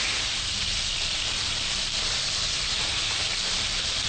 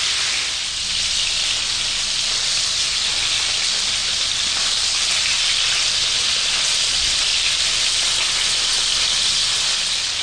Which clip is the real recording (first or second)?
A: second